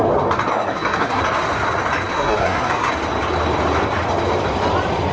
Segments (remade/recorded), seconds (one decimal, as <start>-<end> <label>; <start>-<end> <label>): 0.0-0.5 recorded; 0.5-1.2 remade; 1.2-2.1 recorded; 2.1-2.9 remade; 2.9-5.1 recorded